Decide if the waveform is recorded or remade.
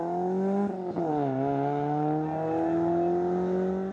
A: recorded